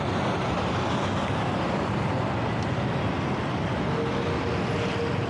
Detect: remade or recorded recorded